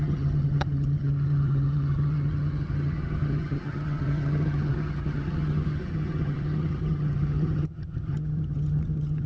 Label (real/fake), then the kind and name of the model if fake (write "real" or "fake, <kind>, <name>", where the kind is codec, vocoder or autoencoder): fake, vocoder, HiFi-GAN